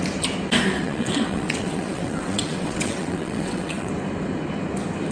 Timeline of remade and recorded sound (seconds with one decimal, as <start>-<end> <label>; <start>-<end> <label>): 0.0-0.8 recorded; 0.8-3.9 remade; 3.9-5.1 recorded